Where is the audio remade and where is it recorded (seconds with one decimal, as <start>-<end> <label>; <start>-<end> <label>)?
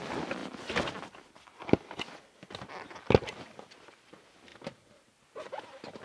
0.0-6.0 recorded